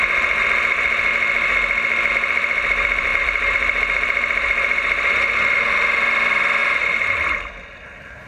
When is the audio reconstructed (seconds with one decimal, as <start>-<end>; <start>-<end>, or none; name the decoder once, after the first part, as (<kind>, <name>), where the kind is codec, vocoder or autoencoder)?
0.0-1.1 (vocoder, BigVGAN v2); 2.1-8.3